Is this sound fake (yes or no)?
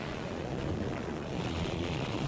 yes